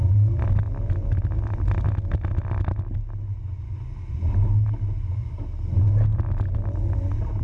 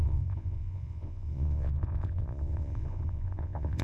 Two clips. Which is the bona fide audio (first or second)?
first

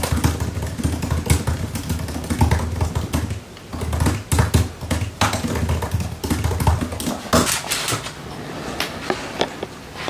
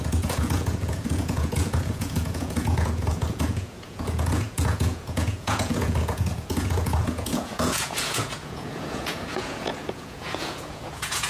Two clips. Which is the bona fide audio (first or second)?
first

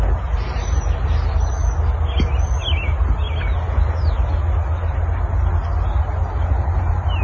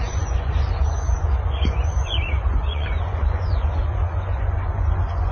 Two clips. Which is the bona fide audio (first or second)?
first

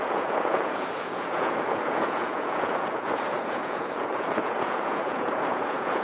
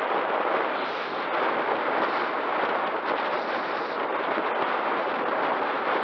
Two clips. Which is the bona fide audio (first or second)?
second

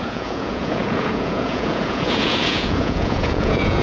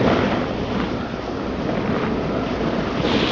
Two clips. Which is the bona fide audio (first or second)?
second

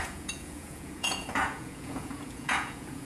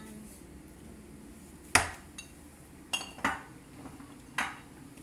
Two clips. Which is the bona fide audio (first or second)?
second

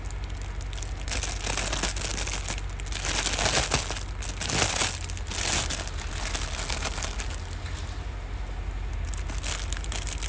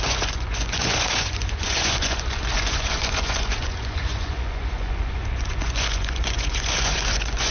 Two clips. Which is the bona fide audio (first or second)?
first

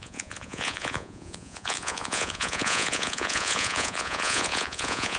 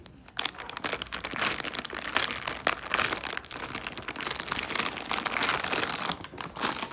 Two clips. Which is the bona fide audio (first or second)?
second